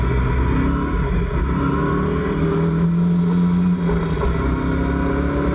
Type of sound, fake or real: real